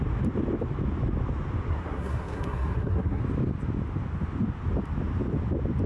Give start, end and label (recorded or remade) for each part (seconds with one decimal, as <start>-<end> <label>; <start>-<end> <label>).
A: 0.0-1.7 recorded; 1.7-3.2 remade; 3.2-5.9 recorded